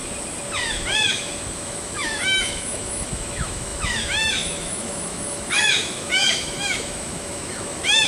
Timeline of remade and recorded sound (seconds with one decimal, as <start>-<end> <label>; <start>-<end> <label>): 0.0-0.7 recorded; 0.7-8.1 remade